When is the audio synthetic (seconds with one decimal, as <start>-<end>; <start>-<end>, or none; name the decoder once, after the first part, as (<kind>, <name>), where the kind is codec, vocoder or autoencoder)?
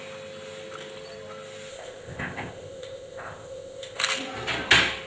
1.7-4.0 (codec, ZipCodec)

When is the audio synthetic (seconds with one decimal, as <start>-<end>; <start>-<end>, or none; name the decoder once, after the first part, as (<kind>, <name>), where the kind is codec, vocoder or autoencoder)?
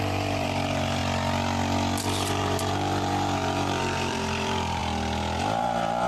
0.0-1.0 (vocoder, BigVGAN v2); 2.0-4.8; 5.6-6.1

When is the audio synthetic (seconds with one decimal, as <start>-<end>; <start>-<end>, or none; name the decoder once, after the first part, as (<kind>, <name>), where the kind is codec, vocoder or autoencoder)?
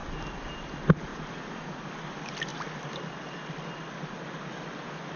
1.1-1.9 (vocoder, Vocos)